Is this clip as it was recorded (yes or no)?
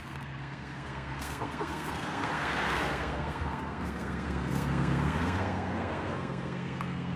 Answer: no